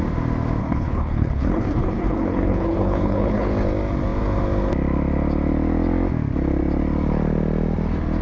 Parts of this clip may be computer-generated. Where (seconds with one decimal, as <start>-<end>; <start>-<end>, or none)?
0.6-3.5